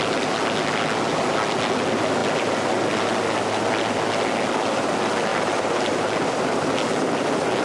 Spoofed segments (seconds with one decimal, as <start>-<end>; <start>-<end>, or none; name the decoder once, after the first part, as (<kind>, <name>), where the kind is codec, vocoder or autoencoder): none